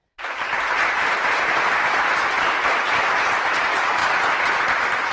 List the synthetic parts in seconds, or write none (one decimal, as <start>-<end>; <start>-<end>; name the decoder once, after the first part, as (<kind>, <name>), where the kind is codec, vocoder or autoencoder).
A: none